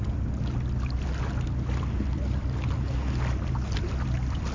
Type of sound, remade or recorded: recorded